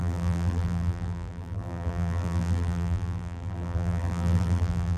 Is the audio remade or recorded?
remade